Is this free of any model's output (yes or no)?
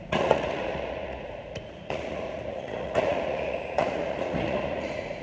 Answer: no